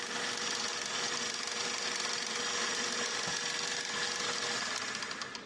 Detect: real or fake real